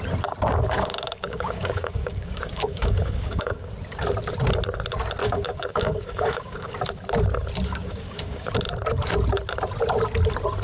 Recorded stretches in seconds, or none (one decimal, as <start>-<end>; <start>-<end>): 0.0-0.5; 3.7-5.2; 6.8-7.8; 8.5-10.6